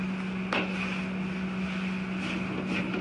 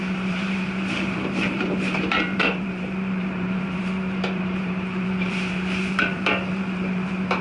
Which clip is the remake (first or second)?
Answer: second